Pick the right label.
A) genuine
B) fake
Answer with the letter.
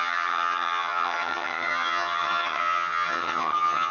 B